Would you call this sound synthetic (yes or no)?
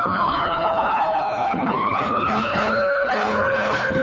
yes